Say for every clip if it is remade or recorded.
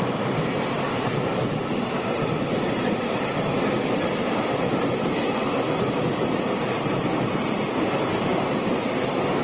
remade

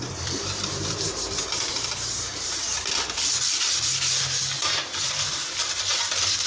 remade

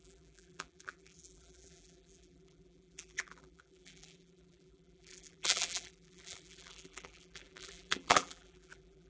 remade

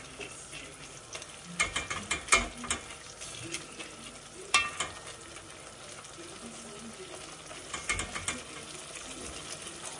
recorded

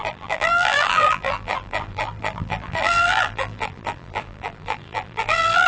remade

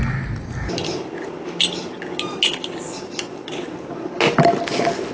recorded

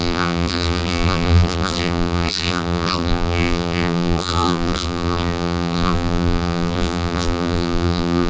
remade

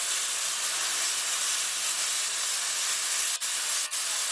recorded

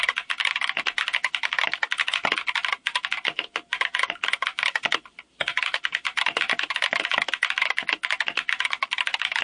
recorded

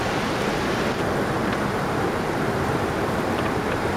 remade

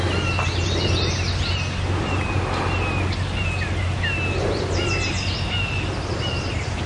recorded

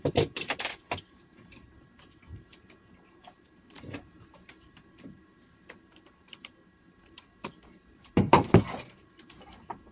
remade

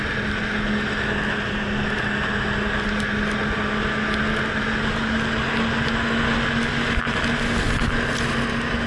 recorded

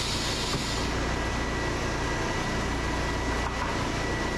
recorded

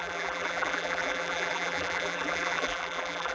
remade